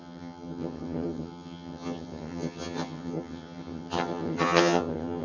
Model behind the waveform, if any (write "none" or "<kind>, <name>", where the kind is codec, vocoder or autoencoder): vocoder, HiFi-GAN